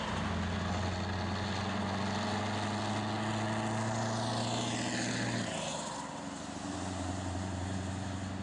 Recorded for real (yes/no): yes